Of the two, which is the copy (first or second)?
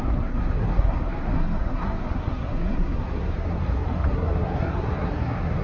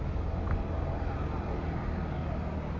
first